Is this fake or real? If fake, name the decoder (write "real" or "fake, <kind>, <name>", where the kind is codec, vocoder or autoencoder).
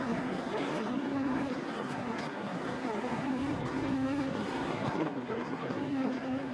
fake, codec, SNAC